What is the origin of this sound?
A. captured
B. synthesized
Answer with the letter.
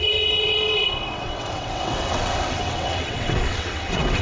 B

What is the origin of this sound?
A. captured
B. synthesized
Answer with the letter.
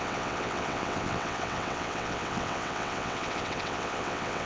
B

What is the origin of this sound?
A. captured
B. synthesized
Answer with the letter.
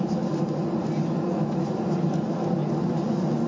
A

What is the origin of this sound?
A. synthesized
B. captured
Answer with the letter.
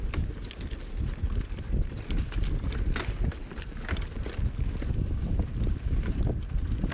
B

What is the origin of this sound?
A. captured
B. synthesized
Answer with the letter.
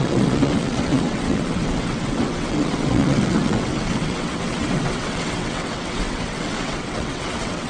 B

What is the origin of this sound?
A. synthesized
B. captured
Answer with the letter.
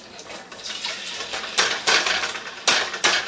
B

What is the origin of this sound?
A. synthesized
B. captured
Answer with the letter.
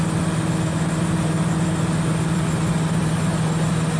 B